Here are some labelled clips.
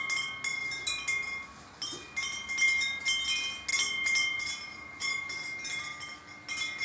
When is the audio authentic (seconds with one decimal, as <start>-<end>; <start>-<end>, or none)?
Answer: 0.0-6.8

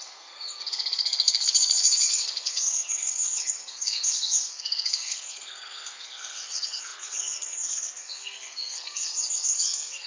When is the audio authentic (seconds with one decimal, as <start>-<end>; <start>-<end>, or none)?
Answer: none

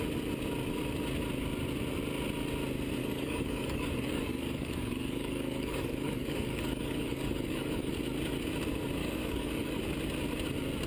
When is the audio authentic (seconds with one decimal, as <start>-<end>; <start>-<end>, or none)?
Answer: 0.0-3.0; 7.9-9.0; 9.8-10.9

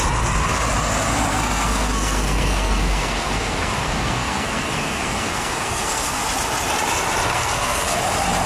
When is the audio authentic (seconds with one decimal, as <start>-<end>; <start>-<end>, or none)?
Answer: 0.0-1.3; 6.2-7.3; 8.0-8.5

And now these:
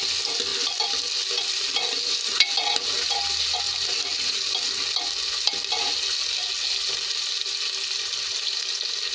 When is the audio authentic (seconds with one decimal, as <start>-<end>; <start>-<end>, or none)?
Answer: 0.0-9.1

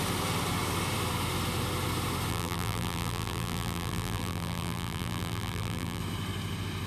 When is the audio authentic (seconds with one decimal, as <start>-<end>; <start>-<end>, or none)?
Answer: 0.0-2.3; 6.0-6.9